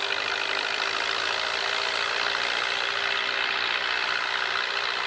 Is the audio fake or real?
real